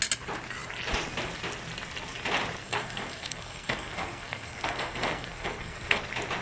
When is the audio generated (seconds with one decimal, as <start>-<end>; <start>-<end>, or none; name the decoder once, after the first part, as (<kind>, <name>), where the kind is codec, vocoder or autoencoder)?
2.6-6.0 (codec, SNAC)